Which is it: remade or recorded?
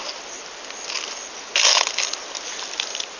recorded